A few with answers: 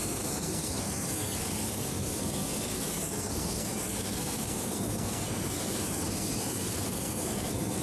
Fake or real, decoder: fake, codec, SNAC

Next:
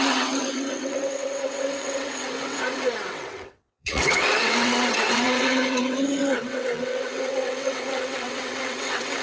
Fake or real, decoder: fake, vocoder, WaveNeXt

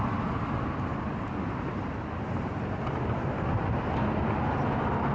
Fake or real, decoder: real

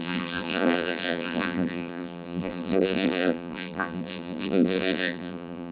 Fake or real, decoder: fake, vocoder, BigVGAN v2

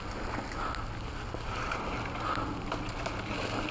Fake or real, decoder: real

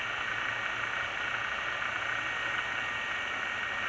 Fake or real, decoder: real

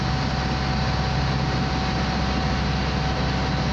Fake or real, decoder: real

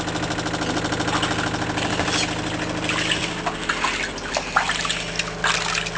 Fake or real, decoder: real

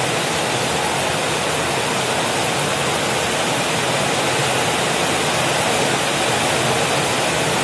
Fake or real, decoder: real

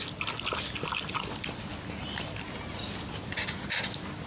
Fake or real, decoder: real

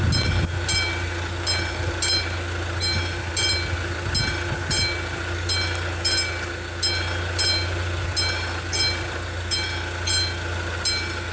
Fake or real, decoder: real